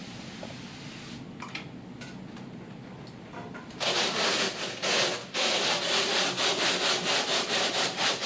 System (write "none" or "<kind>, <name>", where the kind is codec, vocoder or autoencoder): none